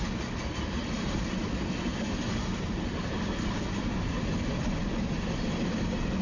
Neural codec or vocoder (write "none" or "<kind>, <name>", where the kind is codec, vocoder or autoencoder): none